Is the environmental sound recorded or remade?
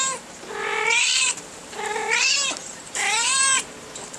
remade